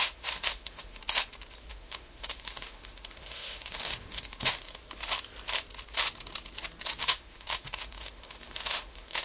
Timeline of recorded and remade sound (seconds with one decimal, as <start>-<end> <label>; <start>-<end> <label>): 0.0-1.0 remade; 1.0-1.7 recorded; 1.7-4.8 remade; 4.8-7.0 recorded; 7.0-9.2 remade